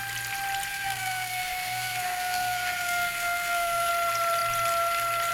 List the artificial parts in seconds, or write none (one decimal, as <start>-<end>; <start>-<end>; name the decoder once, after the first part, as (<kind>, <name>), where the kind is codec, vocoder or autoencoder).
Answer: 0.7-3.9 (codec, SNAC)